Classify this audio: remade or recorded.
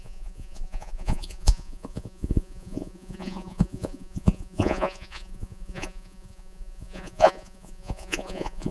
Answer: remade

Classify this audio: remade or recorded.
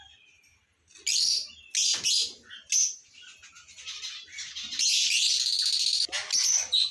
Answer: recorded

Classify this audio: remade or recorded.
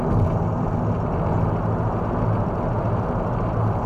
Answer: recorded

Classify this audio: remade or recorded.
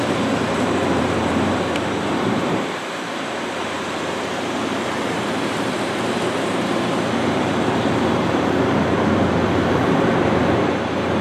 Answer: remade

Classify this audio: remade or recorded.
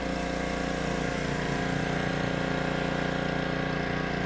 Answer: recorded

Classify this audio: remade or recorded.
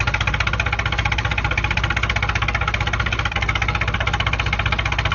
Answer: recorded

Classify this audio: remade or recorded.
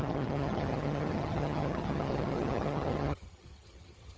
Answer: remade